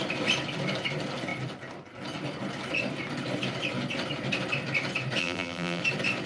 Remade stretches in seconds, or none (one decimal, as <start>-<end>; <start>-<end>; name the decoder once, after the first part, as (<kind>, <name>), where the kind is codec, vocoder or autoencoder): 5.2-5.8 (vocoder, BigVGAN v2)